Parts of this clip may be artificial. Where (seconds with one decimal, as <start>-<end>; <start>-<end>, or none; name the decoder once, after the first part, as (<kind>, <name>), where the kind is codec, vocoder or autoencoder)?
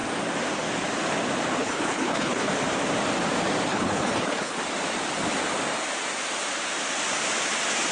1.6-2.5 (codec, HILCodec); 3.7-4.6